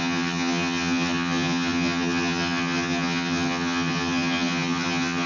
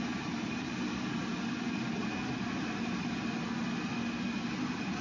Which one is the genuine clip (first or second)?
second